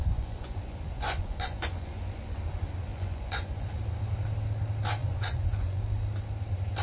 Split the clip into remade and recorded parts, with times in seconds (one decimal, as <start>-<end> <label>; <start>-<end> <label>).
0.0-2.4 remade; 2.4-2.9 recorded; 2.9-3.7 remade; 3.7-5.0 recorded; 5.0-5.8 remade; 5.8-6.8 recorded

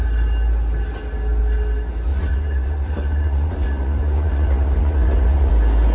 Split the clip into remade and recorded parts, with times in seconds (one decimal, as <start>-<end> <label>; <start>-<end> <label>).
0.0-2.1 recorded; 2.1-5.5 remade; 5.5-5.9 recorded

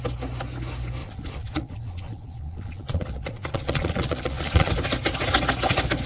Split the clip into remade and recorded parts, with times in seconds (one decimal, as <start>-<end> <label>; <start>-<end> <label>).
0.0-1.0 recorded; 1.0-4.7 remade; 4.7-6.1 recorded

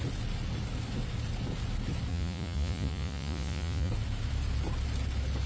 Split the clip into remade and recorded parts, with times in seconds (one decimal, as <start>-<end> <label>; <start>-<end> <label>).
0.0-2.1 recorded; 2.1-3.9 remade; 3.9-5.5 recorded

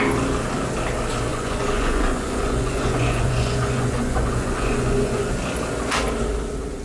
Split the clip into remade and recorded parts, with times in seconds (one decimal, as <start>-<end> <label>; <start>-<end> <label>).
0.0-1.3 recorded; 1.3-5.3 remade; 5.3-6.8 recorded

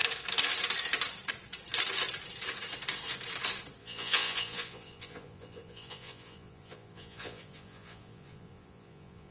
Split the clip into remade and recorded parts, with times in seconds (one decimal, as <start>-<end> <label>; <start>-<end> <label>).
0.0-3.8 recorded; 3.8-9.3 remade